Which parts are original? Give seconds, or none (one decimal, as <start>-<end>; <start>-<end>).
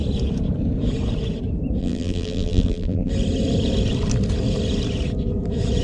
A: 0.0-1.8; 3.1-5.8